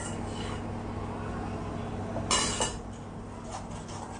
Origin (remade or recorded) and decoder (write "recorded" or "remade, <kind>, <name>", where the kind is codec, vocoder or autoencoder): recorded